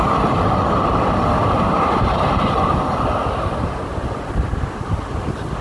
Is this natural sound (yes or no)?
yes